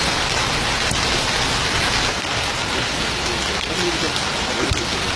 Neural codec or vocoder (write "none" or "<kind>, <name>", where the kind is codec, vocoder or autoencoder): none